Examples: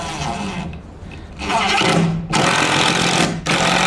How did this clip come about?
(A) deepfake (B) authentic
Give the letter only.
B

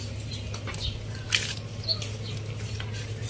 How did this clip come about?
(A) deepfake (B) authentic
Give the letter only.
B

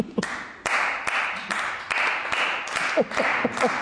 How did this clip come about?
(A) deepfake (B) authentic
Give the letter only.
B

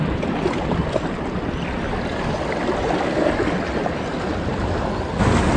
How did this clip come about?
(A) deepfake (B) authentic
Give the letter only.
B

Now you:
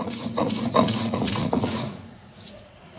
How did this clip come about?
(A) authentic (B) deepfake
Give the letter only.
B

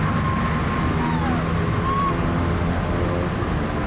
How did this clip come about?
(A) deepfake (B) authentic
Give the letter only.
B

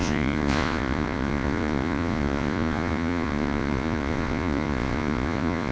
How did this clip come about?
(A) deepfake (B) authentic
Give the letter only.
A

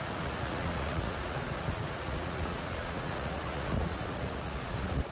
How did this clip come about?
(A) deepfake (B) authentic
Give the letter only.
A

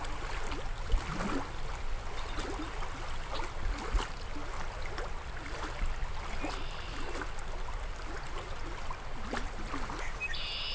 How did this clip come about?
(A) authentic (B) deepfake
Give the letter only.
A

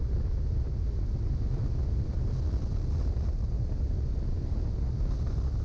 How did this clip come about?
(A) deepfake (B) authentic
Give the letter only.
B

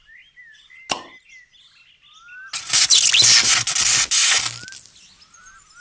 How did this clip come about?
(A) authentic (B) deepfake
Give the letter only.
A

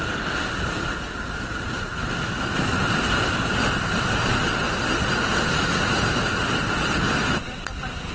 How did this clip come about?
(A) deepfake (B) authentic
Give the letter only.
B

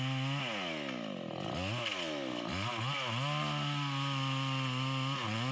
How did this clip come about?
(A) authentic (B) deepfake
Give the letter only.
A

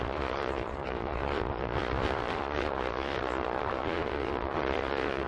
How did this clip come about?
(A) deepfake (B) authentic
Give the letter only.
A